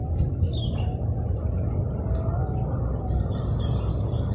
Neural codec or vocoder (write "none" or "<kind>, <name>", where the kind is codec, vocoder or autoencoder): none